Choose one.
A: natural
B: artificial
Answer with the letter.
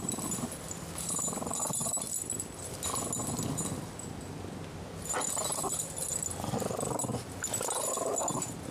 A